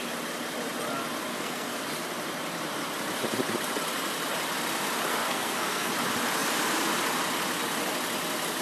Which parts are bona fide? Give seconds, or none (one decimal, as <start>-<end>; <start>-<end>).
0.0-1.3; 1.8-5.1; 5.9-8.6